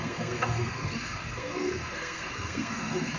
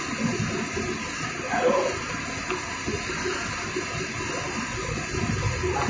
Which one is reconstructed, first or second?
first